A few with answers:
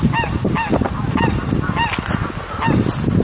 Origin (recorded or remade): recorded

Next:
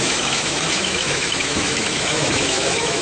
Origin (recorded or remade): remade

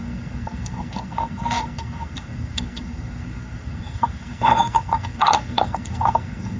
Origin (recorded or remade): remade